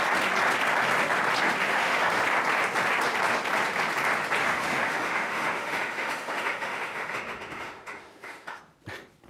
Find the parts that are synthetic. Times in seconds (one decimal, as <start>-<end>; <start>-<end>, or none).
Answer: 1.7-2.2; 4.4-8.6